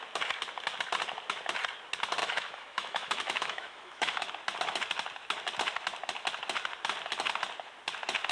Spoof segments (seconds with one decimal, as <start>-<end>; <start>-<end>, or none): 2.2-4.3